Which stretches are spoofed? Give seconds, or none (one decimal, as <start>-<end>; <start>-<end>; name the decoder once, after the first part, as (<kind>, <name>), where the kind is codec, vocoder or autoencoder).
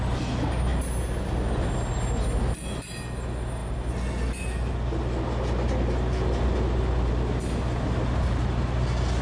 none